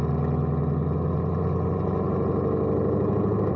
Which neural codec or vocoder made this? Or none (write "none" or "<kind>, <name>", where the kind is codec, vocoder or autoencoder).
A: none